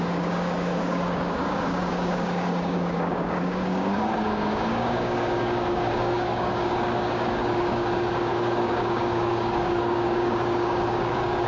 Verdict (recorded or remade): remade